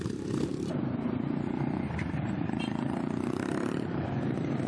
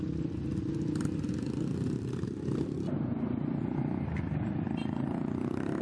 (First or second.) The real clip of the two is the second